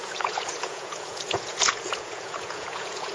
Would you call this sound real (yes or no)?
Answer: no